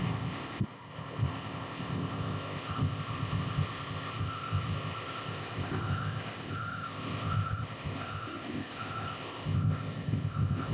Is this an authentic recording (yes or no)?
no